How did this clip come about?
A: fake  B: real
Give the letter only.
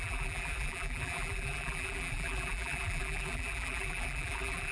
A